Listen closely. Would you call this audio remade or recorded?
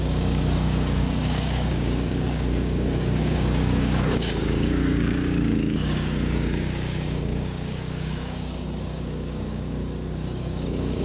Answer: remade